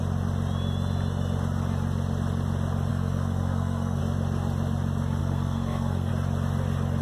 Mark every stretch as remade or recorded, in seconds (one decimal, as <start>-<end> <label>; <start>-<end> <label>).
0.0-2.9 recorded; 2.9-4.0 remade; 4.0-5.2 recorded; 5.2-6.1 remade; 6.1-7.0 recorded